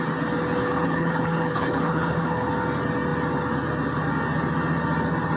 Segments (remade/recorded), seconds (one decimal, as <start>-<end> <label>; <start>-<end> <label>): 0.0-0.6 recorded; 0.6-2.5 remade; 2.5-5.4 recorded